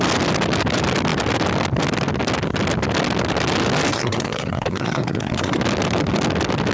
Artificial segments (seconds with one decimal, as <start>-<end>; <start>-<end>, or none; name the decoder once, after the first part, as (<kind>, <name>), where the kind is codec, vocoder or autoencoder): 3.9-5.6 (codec, SNAC)